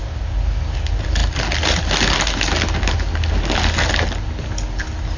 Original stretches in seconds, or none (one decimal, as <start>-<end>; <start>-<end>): 0.0-5.2